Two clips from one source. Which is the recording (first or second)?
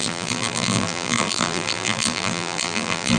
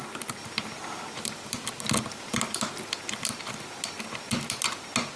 second